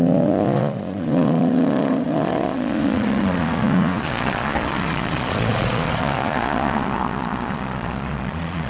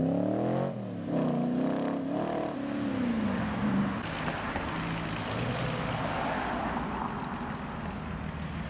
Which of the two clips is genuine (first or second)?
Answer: second